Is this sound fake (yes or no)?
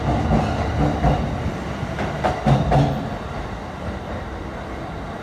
no